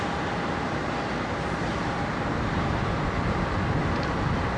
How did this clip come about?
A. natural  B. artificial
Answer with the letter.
A